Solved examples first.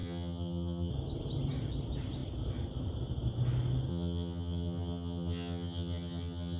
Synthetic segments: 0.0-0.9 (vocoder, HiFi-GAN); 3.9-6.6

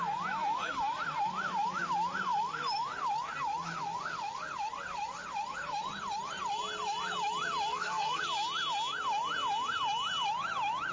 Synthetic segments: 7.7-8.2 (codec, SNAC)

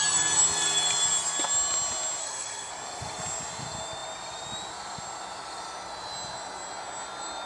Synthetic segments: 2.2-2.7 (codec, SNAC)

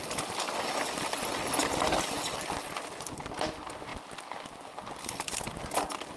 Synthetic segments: none

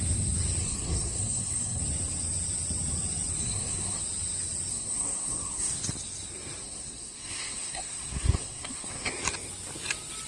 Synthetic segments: 0.6-1.8 (codec, SNAC); 3.4-4.0; 4.7-5.7; 6.6-9.1

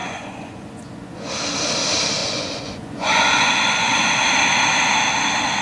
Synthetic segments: 0.0-1.3 (vocoder, Vocos); 2.2-4.3

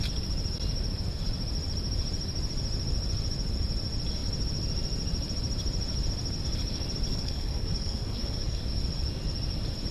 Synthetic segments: 7.1-8.6 (codec, SNAC)